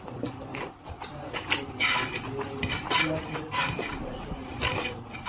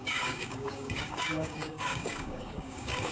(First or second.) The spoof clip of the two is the second